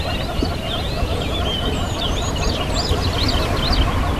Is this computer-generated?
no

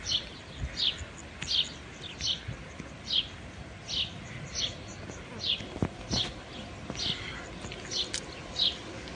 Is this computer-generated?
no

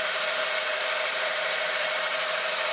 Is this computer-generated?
yes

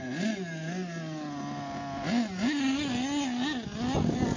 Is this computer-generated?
no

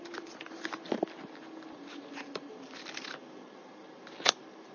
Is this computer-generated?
no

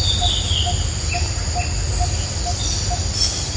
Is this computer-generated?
no